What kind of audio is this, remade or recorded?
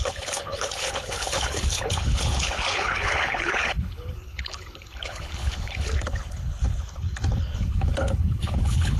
remade